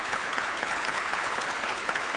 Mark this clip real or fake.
fake